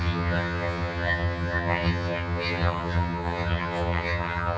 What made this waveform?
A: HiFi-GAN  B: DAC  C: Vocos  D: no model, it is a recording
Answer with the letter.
A